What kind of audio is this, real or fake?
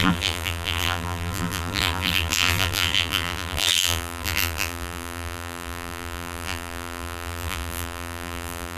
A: fake